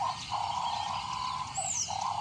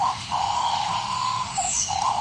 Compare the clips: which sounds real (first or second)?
first